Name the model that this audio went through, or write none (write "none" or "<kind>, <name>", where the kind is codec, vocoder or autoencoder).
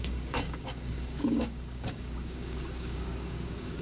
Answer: codec, DAC